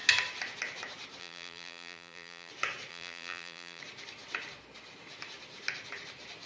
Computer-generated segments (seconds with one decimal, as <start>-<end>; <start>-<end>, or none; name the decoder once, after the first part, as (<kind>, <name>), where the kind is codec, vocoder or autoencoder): 1.2-2.5 (vocoder, BigVGAN v2); 2.9-3.8